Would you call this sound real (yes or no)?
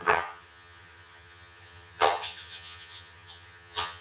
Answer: no